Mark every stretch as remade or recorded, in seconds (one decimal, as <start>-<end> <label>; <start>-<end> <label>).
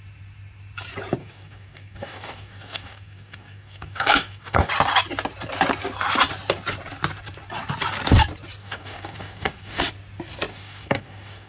0.0-1.2 recorded; 1.2-4.7 remade; 4.7-8.6 recorded; 8.6-9.8 remade; 9.8-10.5 recorded; 10.5-11.5 remade